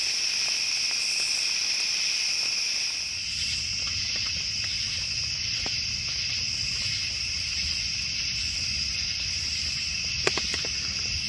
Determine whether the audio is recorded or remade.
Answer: recorded